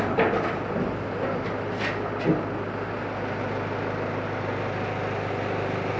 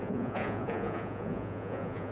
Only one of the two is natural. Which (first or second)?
first